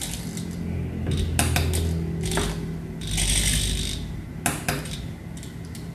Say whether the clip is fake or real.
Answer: real